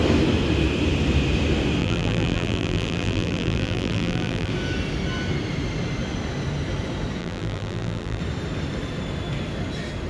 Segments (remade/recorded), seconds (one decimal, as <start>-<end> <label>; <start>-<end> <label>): 0.0-1.8 recorded; 1.8-4.5 remade; 4.5-7.2 recorded; 7.2-8.2 remade; 8.2-10.1 recorded